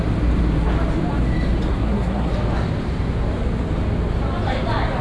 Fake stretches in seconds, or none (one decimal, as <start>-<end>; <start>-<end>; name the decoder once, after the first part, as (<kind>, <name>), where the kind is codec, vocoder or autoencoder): 1.7-2.3 (codec, SNAC)